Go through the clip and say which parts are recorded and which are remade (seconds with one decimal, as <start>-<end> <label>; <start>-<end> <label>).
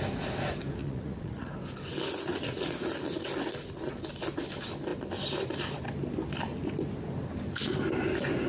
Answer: 0.0-0.8 recorded; 0.8-1.5 remade; 1.5-2.3 recorded; 2.3-2.9 remade; 2.9-8.5 recorded